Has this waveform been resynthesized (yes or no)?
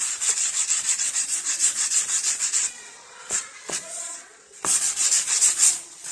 yes